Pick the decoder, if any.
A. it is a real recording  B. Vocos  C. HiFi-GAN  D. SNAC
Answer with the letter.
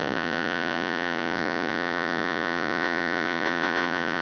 B